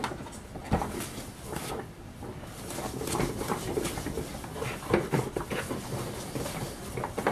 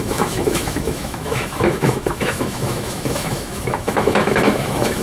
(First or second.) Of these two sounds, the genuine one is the first